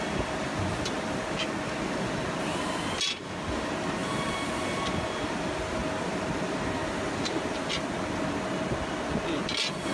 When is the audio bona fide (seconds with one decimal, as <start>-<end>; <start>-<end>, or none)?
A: 0.0-9.9